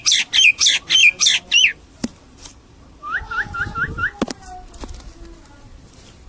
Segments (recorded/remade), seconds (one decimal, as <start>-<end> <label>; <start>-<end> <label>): 0.0-1.0 recorded; 1.0-3.9 remade; 3.9-6.3 recorded